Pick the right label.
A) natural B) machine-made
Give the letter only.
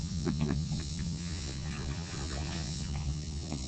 B